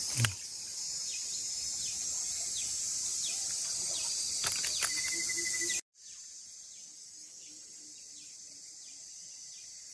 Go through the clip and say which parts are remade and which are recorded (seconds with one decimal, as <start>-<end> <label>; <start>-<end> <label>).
0.0-6.8 recorded; 6.8-7.5 remade; 7.5-9.9 recorded